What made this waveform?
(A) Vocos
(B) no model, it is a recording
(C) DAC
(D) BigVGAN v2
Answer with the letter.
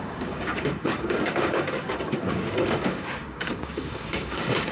C